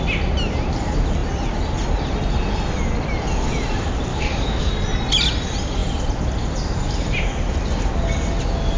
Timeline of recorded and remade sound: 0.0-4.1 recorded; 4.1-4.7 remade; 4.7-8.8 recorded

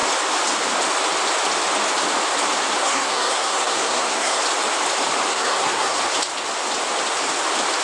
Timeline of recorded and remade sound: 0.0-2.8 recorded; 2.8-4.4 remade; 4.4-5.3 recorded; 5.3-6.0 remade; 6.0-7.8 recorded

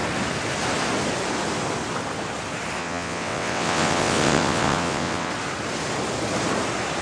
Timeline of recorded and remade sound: 0.0-2.8 recorded; 2.8-5.3 remade; 5.3-7.0 recorded

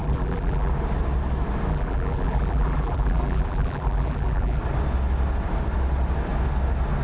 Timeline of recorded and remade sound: 0.0-0.7 remade; 0.7-1.7 recorded; 1.7-4.6 remade; 4.6-7.0 recorded

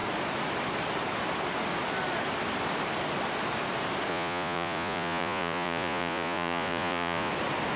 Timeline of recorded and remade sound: 0.0-4.1 recorded; 4.1-7.3 remade; 7.3-7.8 recorded

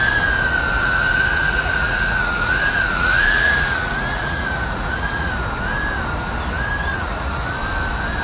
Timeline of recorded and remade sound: 0.0-0.8 recorded; 0.8-5.3 remade; 5.3-6.9 recorded; 6.9-7.6 remade; 7.6-8.2 recorded

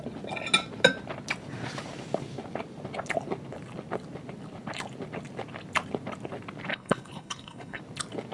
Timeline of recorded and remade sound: 0.0-6.7 recorded; 6.7-7.8 remade; 7.8-8.3 recorded